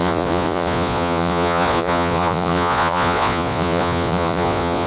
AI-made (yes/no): yes